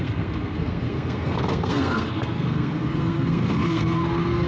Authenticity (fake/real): fake